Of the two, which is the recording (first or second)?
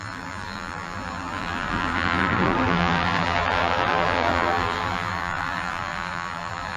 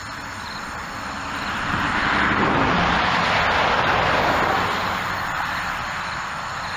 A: second